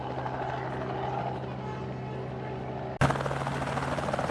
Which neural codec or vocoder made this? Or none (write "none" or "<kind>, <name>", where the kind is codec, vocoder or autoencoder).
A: none